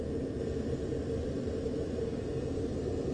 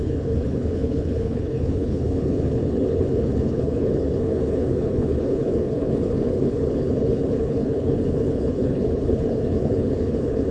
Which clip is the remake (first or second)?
second